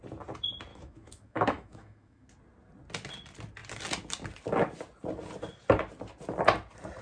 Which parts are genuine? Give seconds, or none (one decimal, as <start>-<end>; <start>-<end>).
0.0-0.7; 2.3-7.0